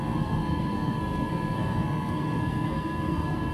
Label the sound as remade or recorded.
remade